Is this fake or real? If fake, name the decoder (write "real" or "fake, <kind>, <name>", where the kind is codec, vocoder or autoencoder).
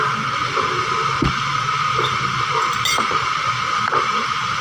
real